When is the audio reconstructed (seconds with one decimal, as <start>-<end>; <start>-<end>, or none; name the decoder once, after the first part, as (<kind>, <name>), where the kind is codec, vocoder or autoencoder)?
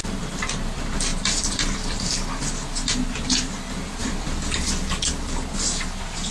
1.1-2.1 (vocoder, BigVGAN v2); 4.0-5.0